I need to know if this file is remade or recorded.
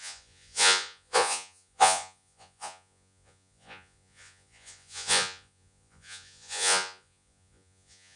remade